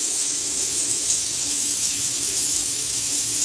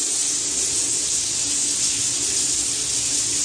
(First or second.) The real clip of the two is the second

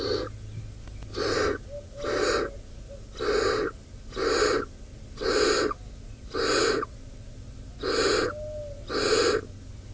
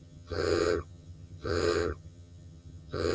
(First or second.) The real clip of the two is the first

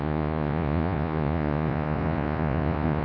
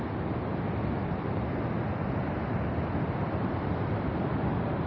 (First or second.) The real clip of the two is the second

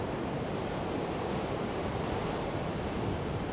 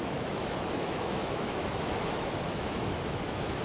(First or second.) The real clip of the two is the first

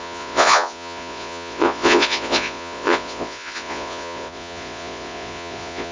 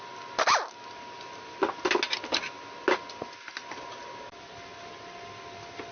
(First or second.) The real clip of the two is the second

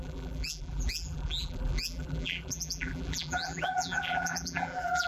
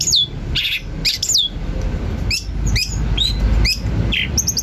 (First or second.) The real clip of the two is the second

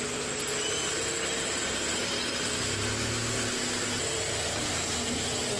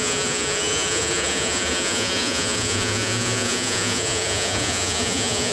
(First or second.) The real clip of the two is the first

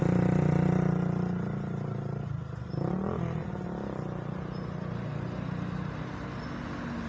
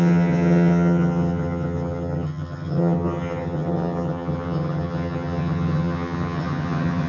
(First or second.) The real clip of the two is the first